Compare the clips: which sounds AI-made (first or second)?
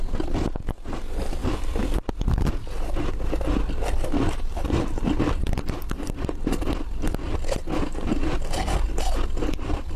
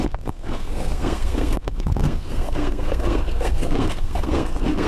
second